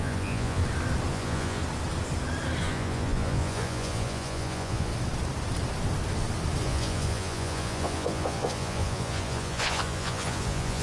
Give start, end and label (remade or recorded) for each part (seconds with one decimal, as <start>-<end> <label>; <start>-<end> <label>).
0.0-0.6 remade; 0.6-1.1 recorded; 1.1-1.6 remade; 1.6-2.6 recorded; 2.6-4.9 remade; 4.9-6.6 recorded; 6.6-10.8 remade